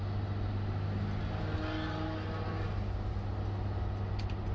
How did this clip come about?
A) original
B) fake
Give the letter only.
A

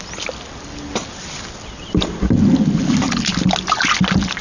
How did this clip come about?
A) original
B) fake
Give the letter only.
A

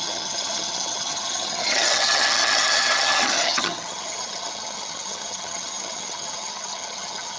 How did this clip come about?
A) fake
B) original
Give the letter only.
A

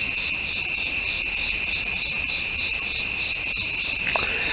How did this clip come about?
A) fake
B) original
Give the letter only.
B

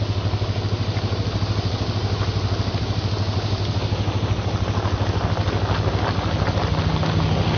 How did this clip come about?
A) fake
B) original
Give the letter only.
B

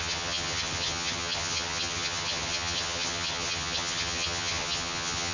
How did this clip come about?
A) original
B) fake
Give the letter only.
B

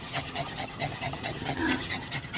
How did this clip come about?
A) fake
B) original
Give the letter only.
A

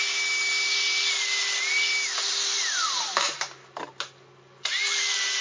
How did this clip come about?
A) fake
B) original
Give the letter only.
B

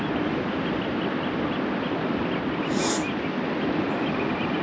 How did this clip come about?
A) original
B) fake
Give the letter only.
A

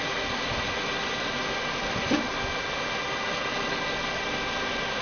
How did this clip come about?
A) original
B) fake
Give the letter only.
A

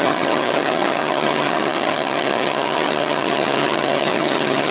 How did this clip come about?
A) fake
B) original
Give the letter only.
A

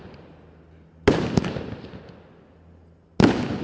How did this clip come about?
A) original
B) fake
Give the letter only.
A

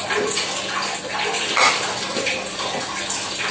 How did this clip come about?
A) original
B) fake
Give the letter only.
A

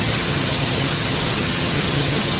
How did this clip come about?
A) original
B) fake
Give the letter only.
B